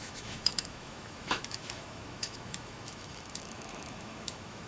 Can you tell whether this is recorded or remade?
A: remade